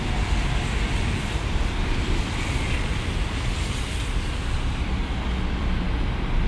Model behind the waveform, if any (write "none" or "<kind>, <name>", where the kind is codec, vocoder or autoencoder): none